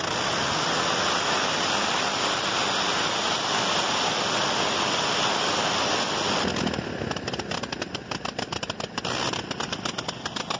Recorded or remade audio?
recorded